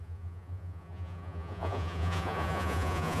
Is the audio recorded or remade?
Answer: remade